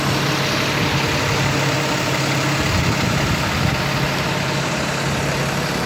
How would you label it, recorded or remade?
recorded